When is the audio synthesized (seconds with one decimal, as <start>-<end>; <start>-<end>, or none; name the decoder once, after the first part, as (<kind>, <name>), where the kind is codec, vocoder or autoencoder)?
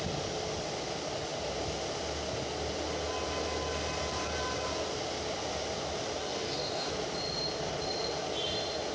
6.2-6.9 (codec, DAC)